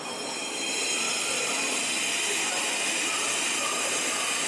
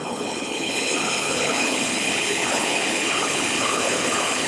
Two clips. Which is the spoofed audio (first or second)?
second